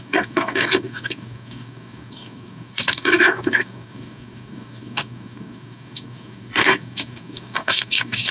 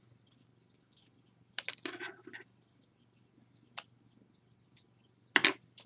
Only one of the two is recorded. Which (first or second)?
second